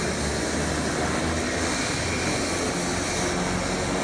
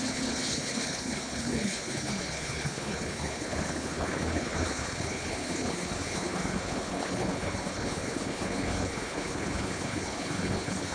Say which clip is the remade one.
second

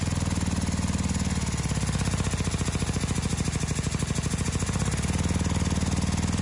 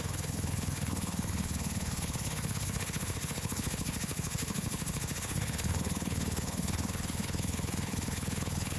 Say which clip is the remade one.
second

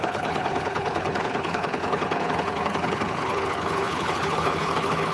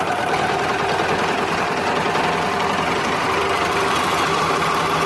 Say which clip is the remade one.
first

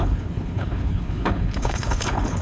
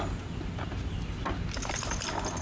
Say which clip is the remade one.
first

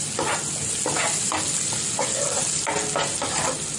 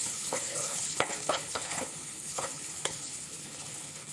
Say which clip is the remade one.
second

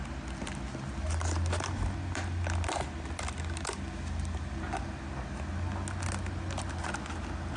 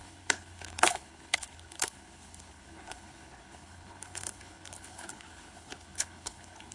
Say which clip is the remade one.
second